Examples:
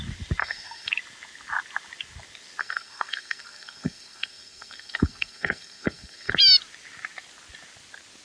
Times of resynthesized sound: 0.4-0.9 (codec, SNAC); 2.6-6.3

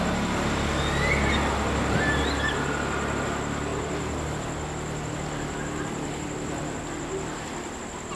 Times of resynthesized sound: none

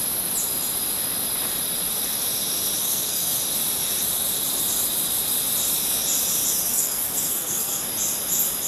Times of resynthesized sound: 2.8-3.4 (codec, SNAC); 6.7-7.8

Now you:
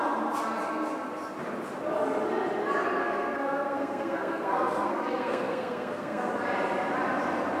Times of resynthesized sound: 3.0-6.3 (codec, SNAC)

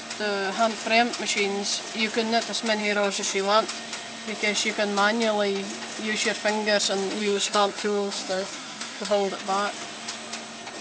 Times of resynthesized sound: 2.8-3.6 (codec, SNAC); 7.2-9.3

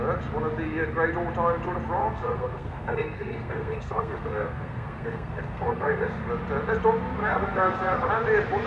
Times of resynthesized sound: 2.0-6.3 (codec, SNAC); 7.2-8.1

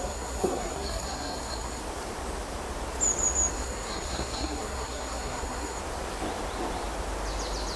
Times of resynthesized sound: 0.0-1.8 (codec, SNAC); 3.5-5.8

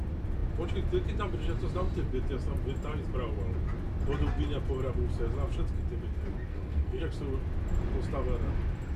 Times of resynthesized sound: 6.5-7.0 (codec, SNAC)